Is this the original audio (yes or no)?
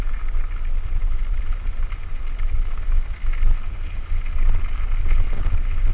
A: yes